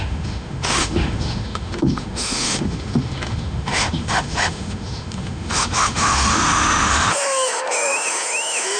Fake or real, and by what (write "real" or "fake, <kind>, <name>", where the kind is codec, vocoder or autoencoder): fake, autoencoder, DAC-VAE